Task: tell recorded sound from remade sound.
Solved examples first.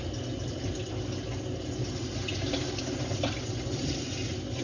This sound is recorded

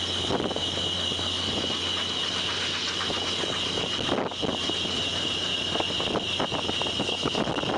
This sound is recorded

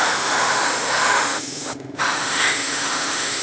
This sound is remade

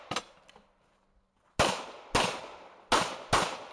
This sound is recorded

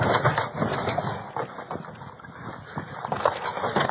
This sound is recorded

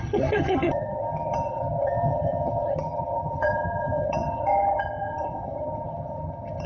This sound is remade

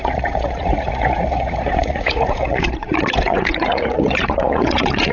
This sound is remade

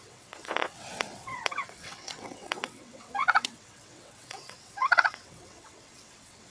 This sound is remade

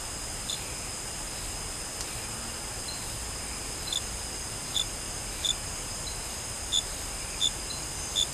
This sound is recorded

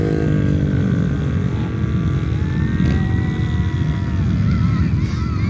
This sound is recorded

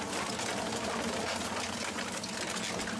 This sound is recorded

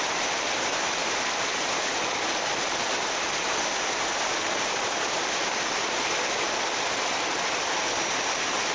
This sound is recorded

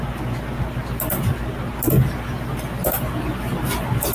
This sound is recorded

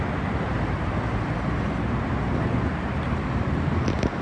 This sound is recorded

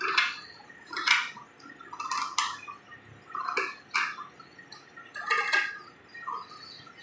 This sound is recorded